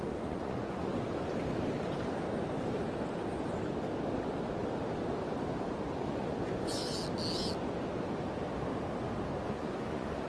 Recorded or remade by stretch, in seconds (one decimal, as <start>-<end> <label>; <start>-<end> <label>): 0.0-0.9 remade; 0.9-5.8 recorded; 5.8-6.8 remade; 6.8-9.5 recorded; 9.5-10.3 remade